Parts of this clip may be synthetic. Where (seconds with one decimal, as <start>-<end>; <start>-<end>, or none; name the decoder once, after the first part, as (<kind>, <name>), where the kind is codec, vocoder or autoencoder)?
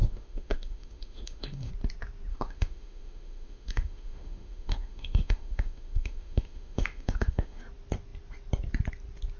0.0-1.7 (autoencoder, DAC-VAE); 2.3-7.6